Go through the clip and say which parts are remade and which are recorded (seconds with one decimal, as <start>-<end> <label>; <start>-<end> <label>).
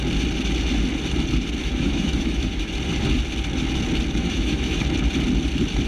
0.0-1.6 recorded; 1.6-2.7 remade; 2.7-4.2 recorded; 4.2-4.8 remade; 4.8-5.9 recorded